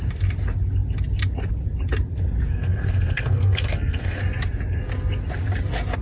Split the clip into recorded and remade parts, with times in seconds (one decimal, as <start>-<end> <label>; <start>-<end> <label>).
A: 0.0-2.5 recorded; 2.5-4.2 remade; 4.2-6.0 recorded